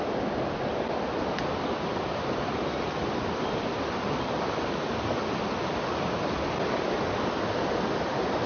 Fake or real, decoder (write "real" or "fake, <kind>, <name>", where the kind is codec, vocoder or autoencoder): real